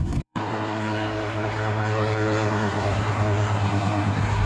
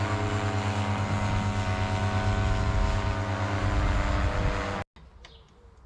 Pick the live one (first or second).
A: second